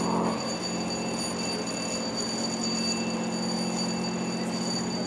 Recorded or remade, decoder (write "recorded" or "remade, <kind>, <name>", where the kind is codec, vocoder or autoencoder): recorded